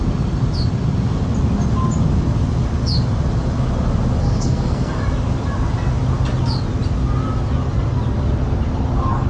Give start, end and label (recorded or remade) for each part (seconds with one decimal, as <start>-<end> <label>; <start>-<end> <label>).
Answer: 0.0-4.2 recorded; 4.2-5.0 remade; 5.0-9.3 recorded